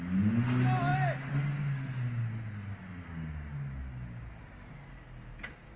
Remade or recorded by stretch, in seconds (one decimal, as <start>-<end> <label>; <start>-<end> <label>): 0.0-5.8 recorded